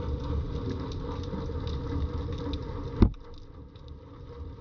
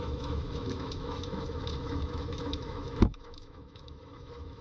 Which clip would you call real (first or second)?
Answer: first